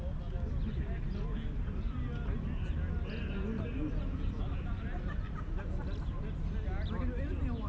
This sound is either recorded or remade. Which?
recorded